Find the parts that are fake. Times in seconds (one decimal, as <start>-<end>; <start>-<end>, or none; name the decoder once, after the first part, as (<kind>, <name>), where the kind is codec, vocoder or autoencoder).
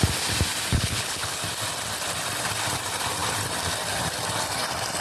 0.7-1.4 (codec, HILCodec)